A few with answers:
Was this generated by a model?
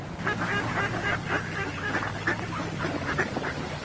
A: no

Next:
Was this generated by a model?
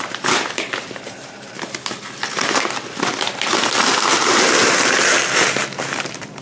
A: yes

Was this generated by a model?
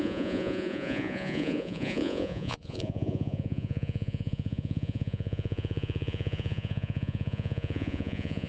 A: yes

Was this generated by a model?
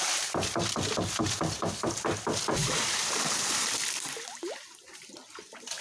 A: no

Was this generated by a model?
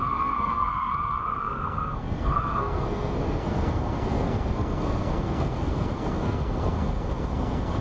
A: yes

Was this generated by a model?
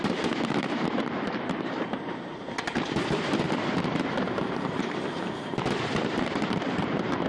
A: yes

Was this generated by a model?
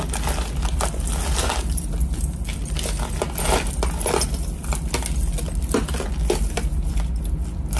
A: no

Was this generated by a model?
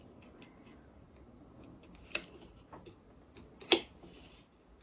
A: no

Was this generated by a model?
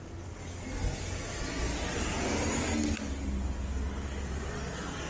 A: no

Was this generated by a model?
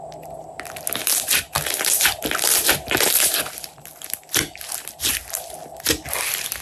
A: no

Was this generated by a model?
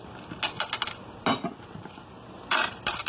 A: no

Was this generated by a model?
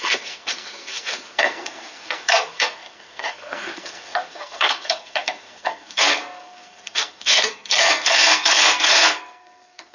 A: yes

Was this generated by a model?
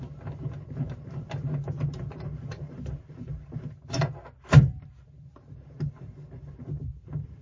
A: no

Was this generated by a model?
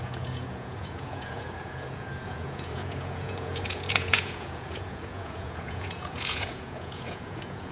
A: yes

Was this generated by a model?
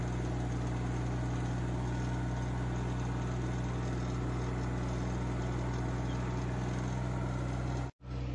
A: no